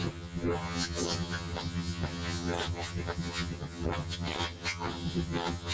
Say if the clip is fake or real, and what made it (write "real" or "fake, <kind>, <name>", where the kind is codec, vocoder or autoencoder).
fake, vocoder, HiFi-GAN